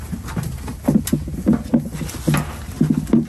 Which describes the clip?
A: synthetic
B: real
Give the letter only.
B